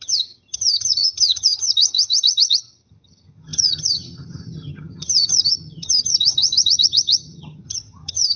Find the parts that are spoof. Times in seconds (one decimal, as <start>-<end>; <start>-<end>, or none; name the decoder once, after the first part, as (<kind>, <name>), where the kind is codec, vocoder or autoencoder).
0.0-8.4 (vocoder, HiFi-GAN)